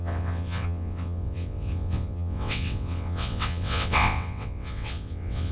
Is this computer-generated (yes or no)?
yes